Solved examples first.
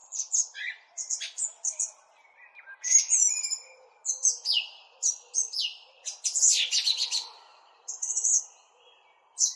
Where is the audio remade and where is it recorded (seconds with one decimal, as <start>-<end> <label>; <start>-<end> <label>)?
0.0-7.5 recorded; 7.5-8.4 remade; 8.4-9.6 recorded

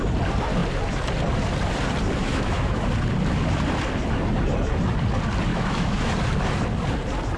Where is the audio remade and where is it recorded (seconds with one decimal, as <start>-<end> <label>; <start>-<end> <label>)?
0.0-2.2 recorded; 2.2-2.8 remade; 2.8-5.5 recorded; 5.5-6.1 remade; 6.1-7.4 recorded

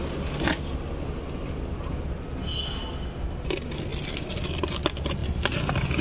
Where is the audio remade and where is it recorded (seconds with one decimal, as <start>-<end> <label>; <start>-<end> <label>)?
0.0-6.0 recorded